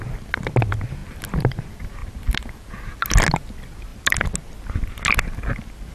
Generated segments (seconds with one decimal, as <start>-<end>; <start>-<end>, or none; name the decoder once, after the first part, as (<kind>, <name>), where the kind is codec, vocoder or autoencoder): 1.0-1.6 (vocoder, BigVGAN v2); 2.0-2.7